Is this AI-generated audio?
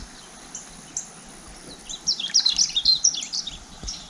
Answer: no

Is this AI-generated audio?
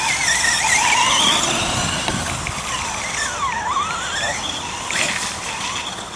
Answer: no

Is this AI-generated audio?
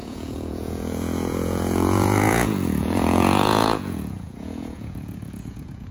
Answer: yes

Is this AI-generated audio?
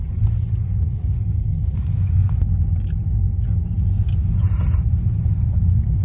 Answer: no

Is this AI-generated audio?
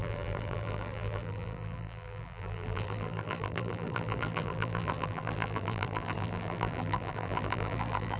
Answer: yes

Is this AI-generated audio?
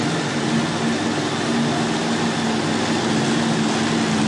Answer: no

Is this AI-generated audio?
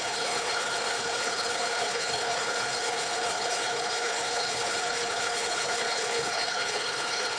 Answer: yes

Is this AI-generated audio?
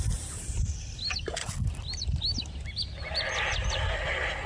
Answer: no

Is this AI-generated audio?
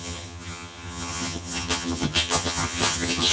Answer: yes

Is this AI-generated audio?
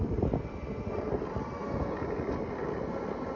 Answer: no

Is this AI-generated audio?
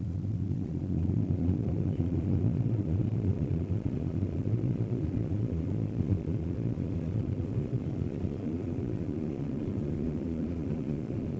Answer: yes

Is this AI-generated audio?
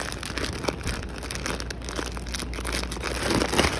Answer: no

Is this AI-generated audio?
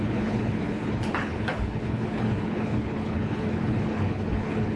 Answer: yes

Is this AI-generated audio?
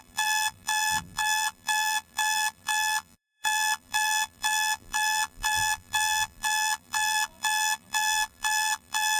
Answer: yes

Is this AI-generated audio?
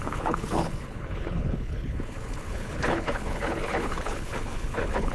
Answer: yes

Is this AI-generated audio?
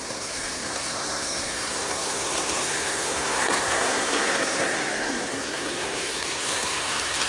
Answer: yes